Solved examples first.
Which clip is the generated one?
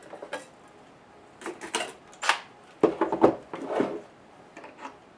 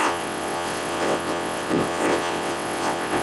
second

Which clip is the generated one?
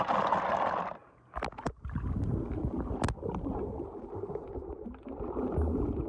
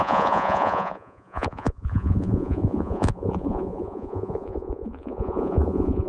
second